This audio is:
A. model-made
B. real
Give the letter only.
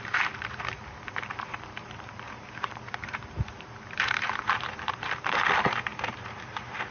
A